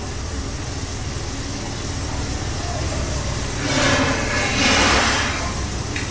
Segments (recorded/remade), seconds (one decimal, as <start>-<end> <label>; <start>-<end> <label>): 0.0-6.1 recorded